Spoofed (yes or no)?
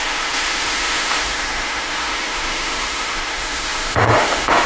yes